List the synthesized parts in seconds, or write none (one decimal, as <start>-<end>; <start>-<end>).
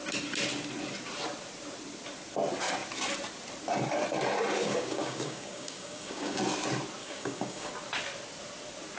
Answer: 4.6-6.4; 7.0-7.7